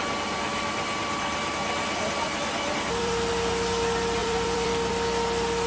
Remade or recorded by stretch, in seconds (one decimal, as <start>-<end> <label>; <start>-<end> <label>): 0.0-0.5 recorded; 0.5-3.3 remade; 3.3-4.2 recorded; 4.2-4.9 remade; 4.9-5.7 recorded